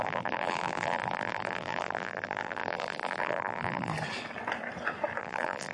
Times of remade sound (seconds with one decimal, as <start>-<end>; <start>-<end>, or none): 0.0-3.9; 5.2-5.7